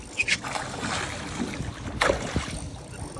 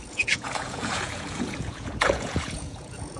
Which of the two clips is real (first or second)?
first